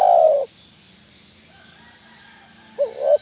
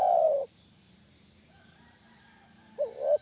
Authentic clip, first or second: first